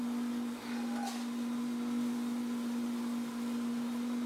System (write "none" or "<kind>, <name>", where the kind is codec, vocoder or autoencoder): none